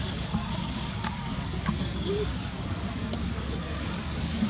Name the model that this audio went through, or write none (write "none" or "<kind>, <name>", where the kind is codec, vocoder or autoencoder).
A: codec, DAC